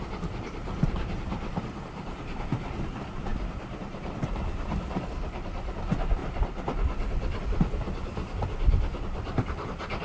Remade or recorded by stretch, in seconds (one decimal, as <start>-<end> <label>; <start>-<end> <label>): 0.0-10.0 recorded